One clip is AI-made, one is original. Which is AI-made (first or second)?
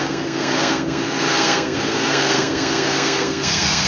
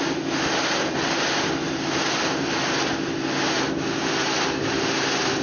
first